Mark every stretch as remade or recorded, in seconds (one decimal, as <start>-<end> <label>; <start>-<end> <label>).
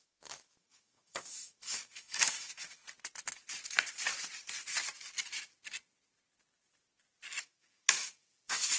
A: 0.0-2.8 remade; 2.8-7.4 recorded; 7.4-8.8 remade